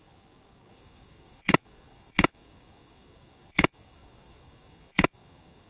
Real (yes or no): no